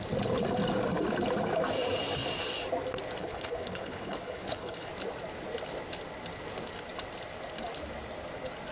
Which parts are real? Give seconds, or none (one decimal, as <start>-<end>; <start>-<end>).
0.0-3.2; 4.9-8.7